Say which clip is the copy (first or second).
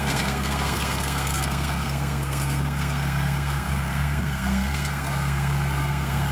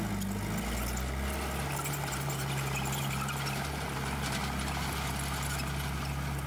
first